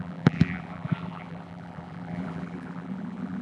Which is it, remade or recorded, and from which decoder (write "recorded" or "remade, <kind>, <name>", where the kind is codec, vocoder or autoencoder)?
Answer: remade, vocoder, BigVGAN v2